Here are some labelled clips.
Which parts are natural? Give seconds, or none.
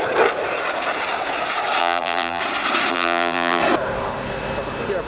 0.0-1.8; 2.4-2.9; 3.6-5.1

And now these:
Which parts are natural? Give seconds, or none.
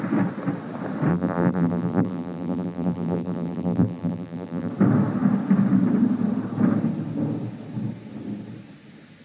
0.0-1.1; 4.7-9.2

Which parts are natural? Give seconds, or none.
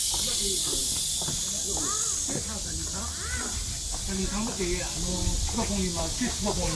0.0-6.7